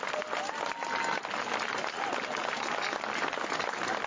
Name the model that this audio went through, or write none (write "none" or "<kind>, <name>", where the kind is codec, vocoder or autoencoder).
none